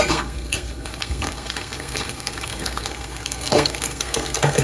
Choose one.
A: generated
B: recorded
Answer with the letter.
A